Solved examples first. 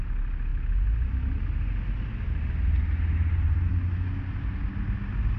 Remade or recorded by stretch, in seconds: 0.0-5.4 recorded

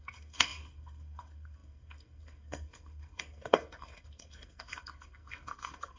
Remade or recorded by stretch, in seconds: 0.0-6.0 remade